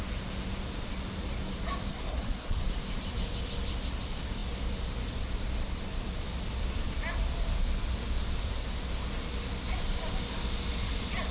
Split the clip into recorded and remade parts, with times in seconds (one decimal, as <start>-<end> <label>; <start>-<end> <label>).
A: 0.0-1.9 recorded; 1.9-2.6 remade; 2.6-11.3 recorded

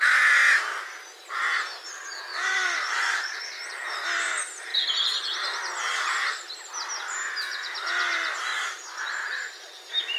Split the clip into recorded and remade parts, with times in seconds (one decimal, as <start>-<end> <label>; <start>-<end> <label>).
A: 0.0-2.3 recorded; 2.3-3.4 remade; 3.4-8.5 recorded; 8.5-9.6 remade; 9.6-10.2 recorded

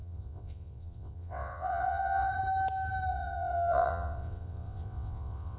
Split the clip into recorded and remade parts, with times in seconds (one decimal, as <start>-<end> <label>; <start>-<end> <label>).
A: 0.0-2.3 remade; 2.3-3.1 recorded; 3.1-5.6 remade

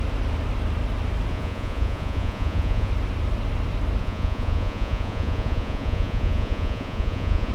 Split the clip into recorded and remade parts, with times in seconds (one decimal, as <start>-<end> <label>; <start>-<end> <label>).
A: 0.0-1.3 recorded; 1.3-2.9 remade; 2.9-4.0 recorded; 4.0-7.5 remade

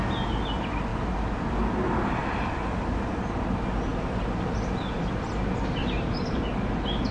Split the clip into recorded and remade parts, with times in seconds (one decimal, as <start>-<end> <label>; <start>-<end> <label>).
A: 0.0-5.8 recorded; 5.8-6.4 remade; 6.4-7.1 recorded

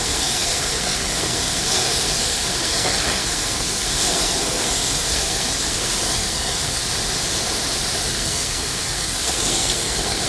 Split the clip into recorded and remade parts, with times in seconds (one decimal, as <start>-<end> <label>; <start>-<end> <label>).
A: 0.0-6.8 remade; 6.8-8.1 recorded; 8.1-10.3 remade

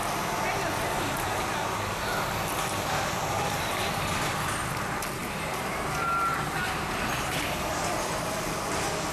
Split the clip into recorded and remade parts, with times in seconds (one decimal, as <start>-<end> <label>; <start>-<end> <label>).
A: 0.0-6.3 recorded; 6.3-7.7 remade; 7.7-9.1 recorded